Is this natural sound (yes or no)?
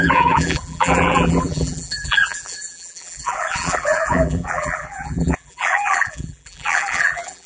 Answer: no